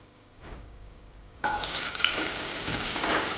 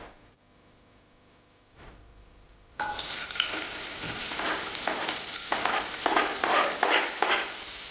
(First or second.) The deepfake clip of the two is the first